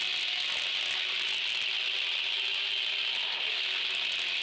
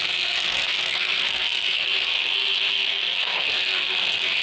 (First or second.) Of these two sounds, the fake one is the second